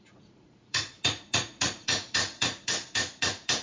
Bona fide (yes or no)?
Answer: no